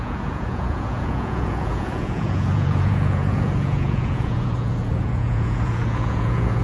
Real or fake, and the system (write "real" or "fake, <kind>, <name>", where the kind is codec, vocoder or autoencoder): fake, vocoder, Vocos